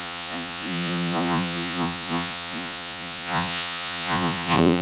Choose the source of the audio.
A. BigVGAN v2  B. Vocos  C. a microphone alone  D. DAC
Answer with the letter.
B